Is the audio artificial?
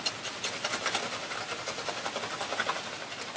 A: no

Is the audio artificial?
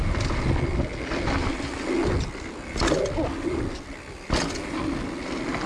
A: no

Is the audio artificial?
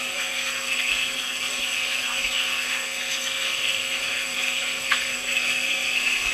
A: yes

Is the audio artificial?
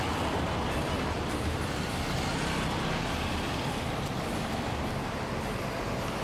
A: no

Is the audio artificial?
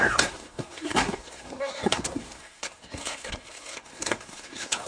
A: yes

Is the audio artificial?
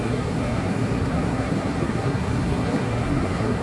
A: yes